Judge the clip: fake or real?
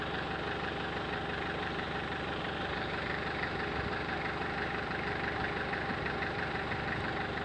fake